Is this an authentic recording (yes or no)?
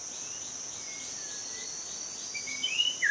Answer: yes